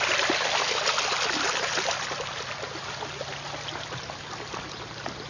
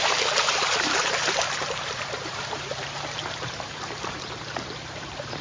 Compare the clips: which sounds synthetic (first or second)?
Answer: second